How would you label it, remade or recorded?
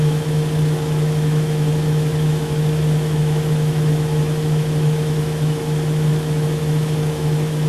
remade